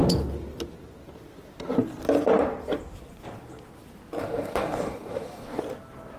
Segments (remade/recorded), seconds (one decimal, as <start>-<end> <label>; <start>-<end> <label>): 0.0-4.2 recorded; 4.2-5.6 remade; 5.6-6.2 recorded